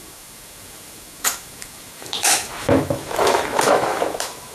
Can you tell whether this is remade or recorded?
remade